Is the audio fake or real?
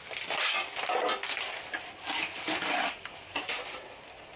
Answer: real